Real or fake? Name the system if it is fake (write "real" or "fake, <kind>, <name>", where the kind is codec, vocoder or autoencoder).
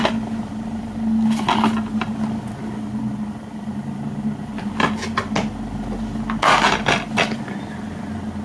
real